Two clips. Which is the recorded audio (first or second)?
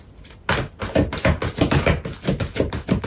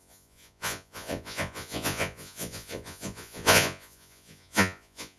first